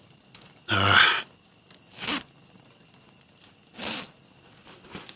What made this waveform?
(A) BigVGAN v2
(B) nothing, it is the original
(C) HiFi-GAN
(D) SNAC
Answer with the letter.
B